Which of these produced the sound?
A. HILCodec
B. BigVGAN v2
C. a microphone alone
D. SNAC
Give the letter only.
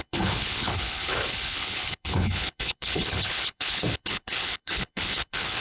A